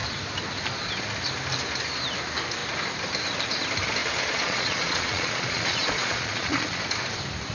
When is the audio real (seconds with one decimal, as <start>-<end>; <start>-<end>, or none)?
0.0-4.0; 6.8-7.5